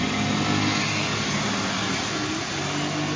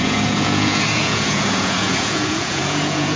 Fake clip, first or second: second